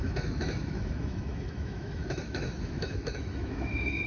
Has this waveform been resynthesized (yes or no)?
yes